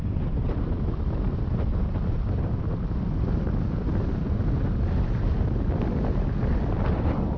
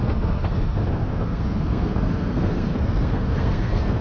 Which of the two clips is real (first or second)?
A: first